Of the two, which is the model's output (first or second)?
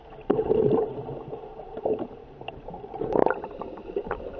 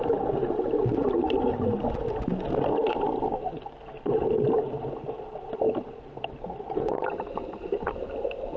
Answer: first